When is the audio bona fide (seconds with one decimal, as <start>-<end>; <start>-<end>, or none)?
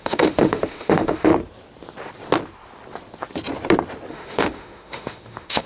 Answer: 1.3-4.1